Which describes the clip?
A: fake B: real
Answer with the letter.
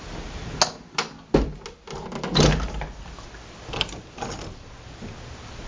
B